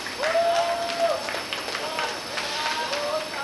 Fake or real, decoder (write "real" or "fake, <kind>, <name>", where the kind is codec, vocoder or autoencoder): real